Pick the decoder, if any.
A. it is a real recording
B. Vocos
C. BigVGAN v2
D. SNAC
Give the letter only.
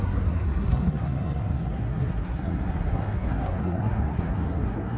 D